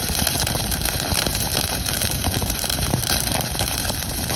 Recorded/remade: remade